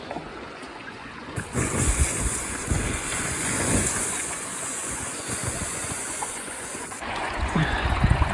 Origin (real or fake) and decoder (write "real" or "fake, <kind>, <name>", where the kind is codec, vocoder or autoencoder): fake, vocoder, Vocos